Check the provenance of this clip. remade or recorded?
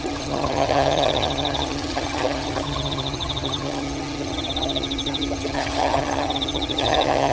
remade